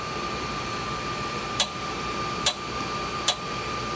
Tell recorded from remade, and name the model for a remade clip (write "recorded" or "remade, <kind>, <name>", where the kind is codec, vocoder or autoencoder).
remade, vocoder, BigVGAN v2